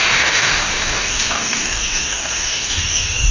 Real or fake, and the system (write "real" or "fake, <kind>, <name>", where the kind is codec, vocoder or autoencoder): fake, codec, DAC